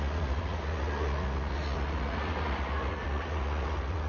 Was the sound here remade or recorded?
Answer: remade